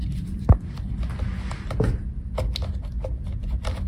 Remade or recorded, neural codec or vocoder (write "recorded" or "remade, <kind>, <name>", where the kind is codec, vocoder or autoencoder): recorded